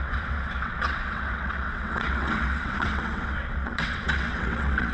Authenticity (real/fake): fake